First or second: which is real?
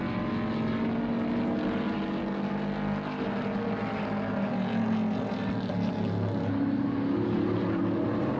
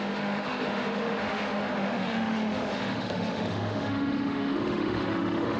first